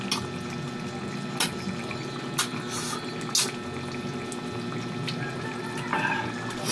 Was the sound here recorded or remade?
recorded